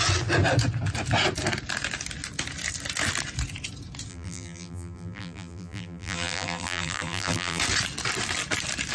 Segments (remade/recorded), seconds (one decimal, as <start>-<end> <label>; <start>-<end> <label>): 0.0-4.1 recorded; 4.1-7.6 remade; 7.6-8.9 recorded